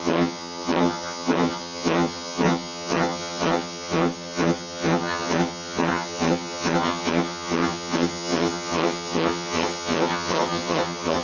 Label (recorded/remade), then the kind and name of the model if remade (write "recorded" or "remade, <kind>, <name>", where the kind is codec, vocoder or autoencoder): remade, vocoder, HiFi-GAN